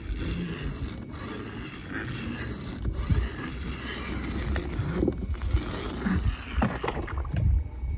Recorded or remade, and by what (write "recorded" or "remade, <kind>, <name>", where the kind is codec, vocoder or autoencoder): recorded